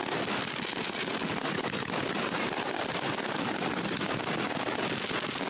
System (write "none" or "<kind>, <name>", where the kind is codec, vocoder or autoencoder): none